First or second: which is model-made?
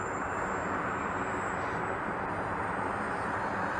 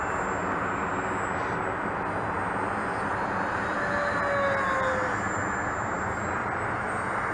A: first